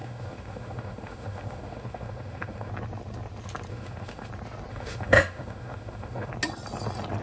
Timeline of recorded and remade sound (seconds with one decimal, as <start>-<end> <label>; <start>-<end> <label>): 0.0-2.7 remade; 2.7-3.7 recorded; 3.7-4.3 remade; 4.3-4.7 recorded; 4.7-6.3 remade; 6.3-7.2 recorded